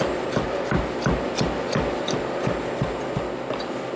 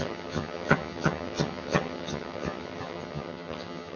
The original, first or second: first